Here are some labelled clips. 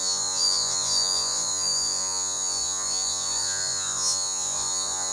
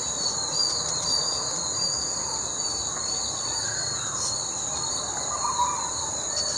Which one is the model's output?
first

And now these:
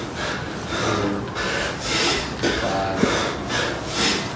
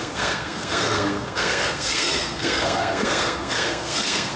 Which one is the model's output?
second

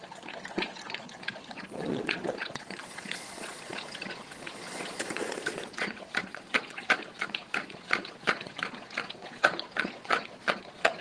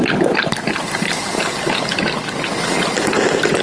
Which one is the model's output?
first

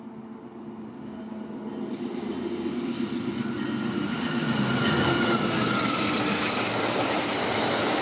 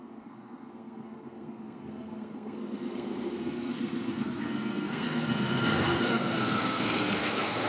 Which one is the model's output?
second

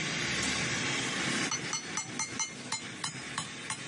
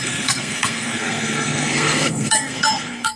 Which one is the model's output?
second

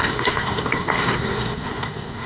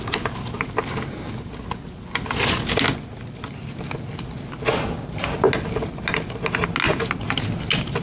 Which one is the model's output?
first